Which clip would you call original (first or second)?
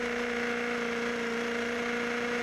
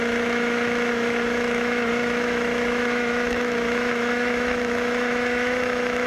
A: first